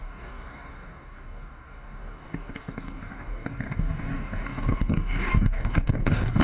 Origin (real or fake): fake